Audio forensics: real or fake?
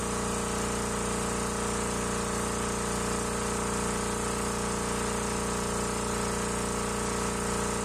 real